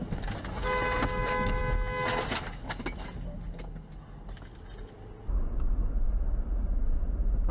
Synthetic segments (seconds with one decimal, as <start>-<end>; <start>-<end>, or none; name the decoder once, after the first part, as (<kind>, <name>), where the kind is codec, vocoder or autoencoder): none